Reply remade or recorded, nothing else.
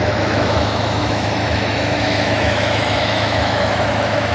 remade